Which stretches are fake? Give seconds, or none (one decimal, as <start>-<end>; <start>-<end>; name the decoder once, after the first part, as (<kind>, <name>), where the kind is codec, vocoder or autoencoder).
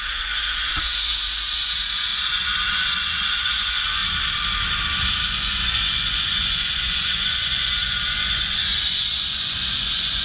0.0-4.0 (vocoder, Vocos); 5.3-10.2